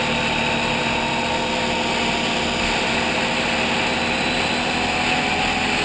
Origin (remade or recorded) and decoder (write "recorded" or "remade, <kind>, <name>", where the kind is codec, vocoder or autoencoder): recorded